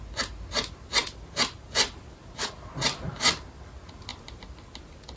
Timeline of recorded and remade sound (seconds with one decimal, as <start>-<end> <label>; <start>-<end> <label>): 0.0-5.2 recorded